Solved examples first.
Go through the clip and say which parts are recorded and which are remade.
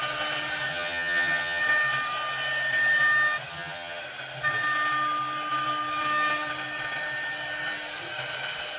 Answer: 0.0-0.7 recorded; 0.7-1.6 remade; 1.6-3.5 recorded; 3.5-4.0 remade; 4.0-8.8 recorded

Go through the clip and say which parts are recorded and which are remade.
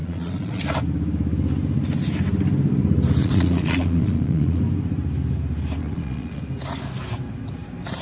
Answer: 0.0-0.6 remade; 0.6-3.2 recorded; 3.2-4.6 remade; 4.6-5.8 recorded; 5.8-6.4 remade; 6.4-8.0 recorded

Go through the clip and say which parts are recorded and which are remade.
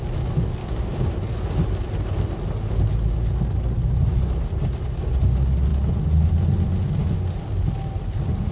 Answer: 0.0-0.6 recorded; 0.6-1.1 remade; 1.1-8.5 recorded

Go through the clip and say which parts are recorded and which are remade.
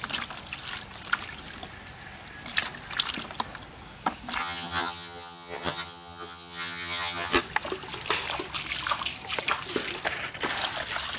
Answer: 0.0-4.4 recorded; 4.4-7.4 remade; 7.4-11.2 recorded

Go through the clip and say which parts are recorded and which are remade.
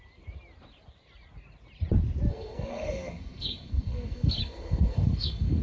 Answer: 0.0-2.3 recorded; 2.3-5.6 remade